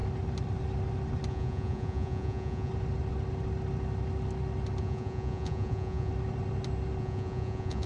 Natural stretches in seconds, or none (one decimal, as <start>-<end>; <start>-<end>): 0.0-1.3; 2.7-4.8; 6.1-7.0